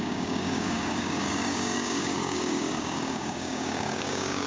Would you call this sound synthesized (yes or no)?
yes